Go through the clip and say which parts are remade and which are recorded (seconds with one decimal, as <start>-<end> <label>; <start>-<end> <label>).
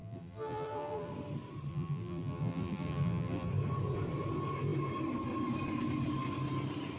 0.0-1.1 remade; 1.1-1.7 recorded; 1.7-3.5 remade; 3.5-7.0 recorded